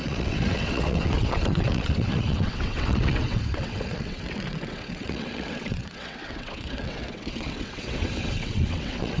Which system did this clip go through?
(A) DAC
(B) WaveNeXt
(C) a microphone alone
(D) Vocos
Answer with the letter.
B